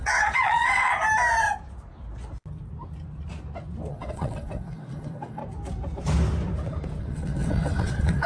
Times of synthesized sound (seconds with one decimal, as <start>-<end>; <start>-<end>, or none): 0.0-0.9; 3.9-5.4; 7.0-8.3

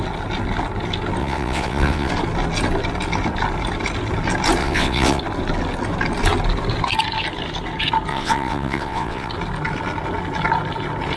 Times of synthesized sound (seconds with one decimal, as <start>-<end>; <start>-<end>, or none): 1.2-2.1; 4.6-5.2; 8.1-9.3

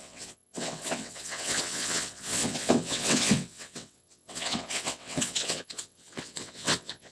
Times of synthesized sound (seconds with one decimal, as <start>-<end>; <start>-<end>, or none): 0.0-7.1